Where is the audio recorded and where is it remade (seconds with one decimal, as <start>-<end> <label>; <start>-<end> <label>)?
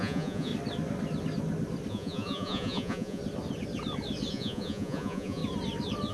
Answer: 0.0-0.5 remade; 0.5-1.9 recorded; 1.9-3.2 remade; 3.2-4.3 recorded; 4.3-5.4 remade; 5.4-6.1 recorded